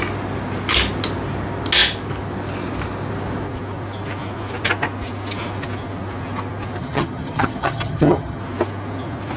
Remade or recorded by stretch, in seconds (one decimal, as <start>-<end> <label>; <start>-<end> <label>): 0.0-6.8 recorded; 6.8-8.4 remade; 8.4-9.4 recorded